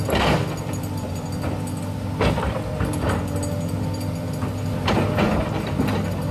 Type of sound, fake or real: real